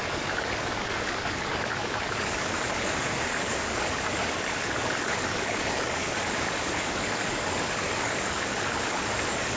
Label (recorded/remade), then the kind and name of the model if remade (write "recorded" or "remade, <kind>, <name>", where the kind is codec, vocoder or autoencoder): remade, codec, DAC